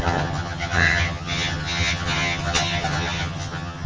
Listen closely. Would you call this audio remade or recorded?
remade